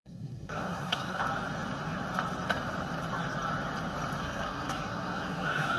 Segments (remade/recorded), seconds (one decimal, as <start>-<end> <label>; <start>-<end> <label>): 0.0-1.2 remade; 1.2-4.2 recorded; 4.2-5.8 remade